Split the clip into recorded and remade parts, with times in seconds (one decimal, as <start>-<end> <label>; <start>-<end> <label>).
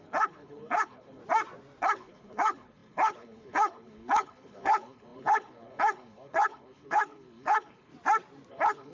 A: 0.0-1.2 remade; 1.2-1.8 recorded; 1.8-7.9 remade; 7.9-8.5 recorded; 8.5-8.9 remade